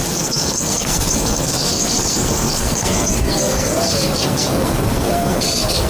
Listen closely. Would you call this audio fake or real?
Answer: fake